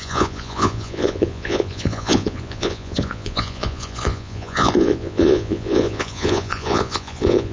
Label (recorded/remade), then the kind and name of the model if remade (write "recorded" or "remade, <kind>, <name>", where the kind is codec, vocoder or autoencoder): remade, vocoder, Vocos